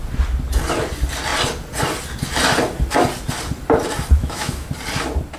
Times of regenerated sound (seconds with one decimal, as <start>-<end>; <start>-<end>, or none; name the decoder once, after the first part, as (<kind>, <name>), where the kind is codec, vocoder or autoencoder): 4.2-4.7 (autoencoder, DAC-VAE)